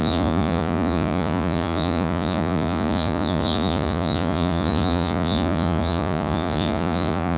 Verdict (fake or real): fake